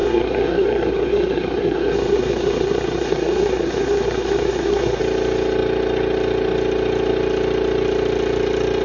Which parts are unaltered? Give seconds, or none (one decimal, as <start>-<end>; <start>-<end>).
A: 5.0-8.8